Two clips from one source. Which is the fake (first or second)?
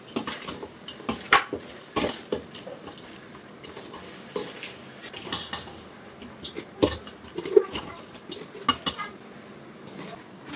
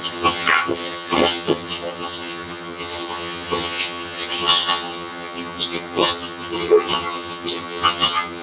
second